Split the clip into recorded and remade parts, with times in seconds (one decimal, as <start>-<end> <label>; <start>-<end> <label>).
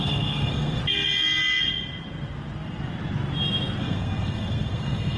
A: 0.0-0.8 remade; 0.8-3.8 recorded; 3.8-5.2 remade